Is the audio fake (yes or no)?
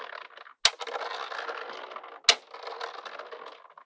no